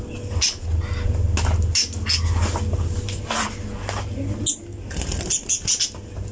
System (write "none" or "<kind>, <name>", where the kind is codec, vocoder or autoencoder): none